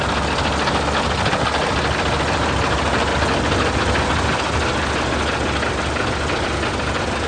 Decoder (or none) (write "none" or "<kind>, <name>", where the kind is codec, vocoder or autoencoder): none